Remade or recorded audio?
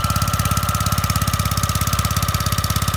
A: recorded